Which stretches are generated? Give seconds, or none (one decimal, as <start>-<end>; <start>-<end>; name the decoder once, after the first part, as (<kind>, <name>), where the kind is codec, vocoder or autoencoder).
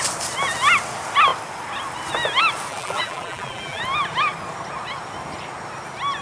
2.7-3.8 (vocoder, BigVGAN v2)